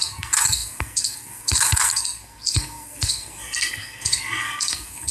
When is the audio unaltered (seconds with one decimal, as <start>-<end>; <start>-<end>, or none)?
none